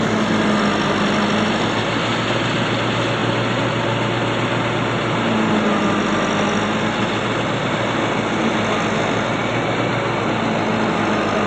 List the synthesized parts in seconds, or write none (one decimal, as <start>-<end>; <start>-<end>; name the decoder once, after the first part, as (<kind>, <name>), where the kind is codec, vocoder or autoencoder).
none